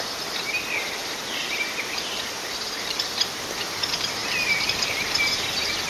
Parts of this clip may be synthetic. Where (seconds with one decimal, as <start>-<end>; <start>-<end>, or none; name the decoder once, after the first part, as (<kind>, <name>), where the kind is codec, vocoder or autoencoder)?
1.0-3.1 (vocoder, BigVGAN v2); 4.2-5.1